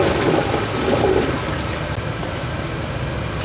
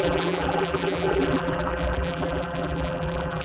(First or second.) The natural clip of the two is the first